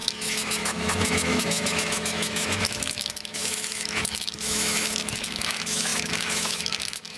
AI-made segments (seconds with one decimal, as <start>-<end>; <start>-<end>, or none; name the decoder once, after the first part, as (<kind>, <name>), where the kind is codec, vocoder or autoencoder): 0.0-7.2 (autoencoder, DAC-VAE)